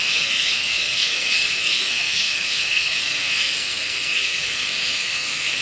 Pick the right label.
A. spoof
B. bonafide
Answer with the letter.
A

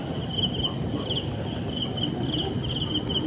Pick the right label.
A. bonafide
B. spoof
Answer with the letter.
A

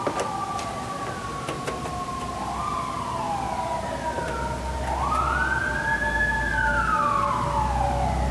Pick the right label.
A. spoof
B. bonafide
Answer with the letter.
B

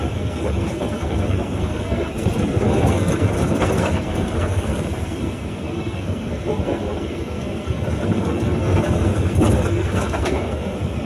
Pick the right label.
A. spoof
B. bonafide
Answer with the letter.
A